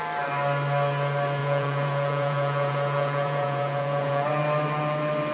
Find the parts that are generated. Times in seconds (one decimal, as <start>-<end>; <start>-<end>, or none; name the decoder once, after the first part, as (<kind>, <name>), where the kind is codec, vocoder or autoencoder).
1.4-4.4 (vocoder, Vocos)